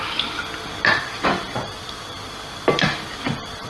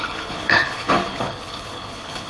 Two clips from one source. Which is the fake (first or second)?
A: second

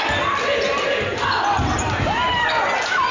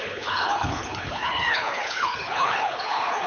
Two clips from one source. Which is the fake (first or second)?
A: second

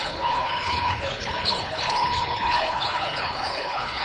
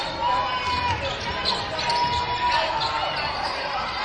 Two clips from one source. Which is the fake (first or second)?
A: first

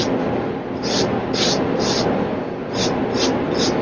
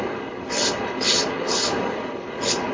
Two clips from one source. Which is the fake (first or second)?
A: second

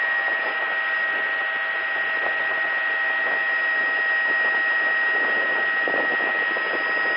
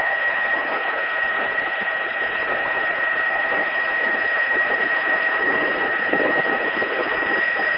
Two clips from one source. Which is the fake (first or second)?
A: second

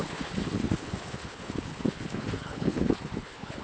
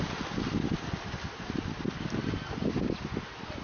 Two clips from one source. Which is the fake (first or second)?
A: first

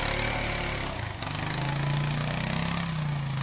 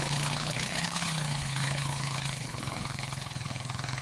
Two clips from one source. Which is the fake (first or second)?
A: second